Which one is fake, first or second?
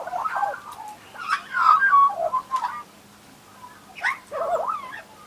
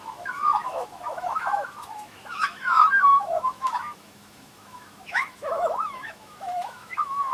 second